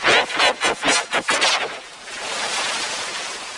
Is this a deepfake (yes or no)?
no